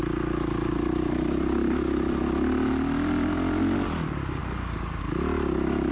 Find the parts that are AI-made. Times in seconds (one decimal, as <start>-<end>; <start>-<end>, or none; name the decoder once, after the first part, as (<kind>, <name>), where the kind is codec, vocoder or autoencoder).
none